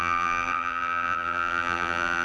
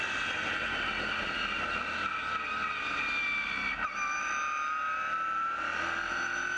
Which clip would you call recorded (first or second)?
second